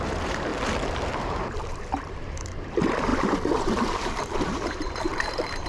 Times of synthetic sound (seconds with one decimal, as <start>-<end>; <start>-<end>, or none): 0.0-0.5; 1.6-5.7